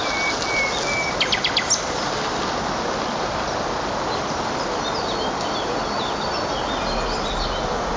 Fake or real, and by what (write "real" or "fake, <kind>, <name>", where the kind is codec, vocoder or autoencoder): real